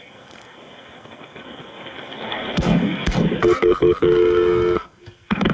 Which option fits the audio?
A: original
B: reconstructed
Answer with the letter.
B